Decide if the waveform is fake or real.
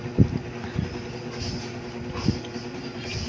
real